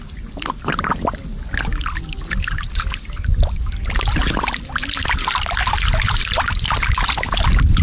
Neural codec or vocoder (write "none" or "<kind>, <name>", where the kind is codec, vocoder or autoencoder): none